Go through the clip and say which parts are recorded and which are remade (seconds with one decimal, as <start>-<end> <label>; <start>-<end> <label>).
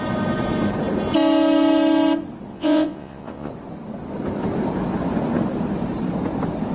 0.0-2.5 recorded; 2.5-3.5 remade; 3.5-6.7 recorded